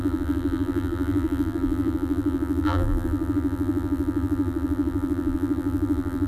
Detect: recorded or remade remade